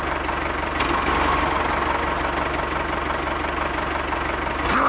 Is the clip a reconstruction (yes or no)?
no